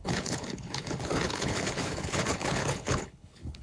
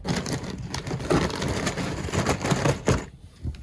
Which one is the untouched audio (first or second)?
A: second